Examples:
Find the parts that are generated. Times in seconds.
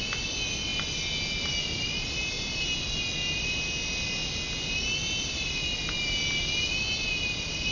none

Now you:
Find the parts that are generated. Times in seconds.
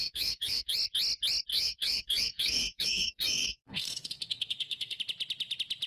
0.0-0.7 (codec, SNAC); 1.5-5.0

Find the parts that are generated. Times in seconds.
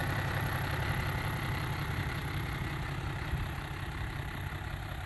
0.0-5.1 (vocoder, BigVGAN v2)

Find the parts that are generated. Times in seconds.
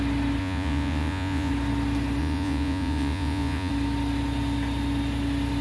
0.4-1.5 (vocoder, Vocos); 2.2-3.7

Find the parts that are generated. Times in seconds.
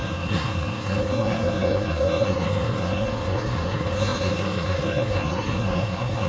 0.0-6.3 (codec, SNAC)